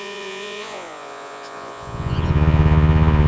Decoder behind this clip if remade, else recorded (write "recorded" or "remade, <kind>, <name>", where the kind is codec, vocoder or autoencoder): remade, vocoder, Vocos